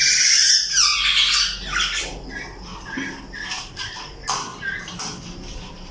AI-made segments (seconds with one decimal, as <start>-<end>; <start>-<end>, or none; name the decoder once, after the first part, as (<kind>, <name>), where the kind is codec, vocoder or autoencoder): 0.0-0.9 (vocoder, BigVGAN v2); 2.0-2.7; 3.6-5.9